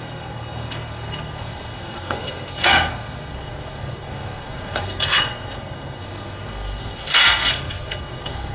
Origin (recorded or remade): remade